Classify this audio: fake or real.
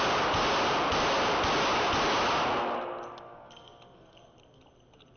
real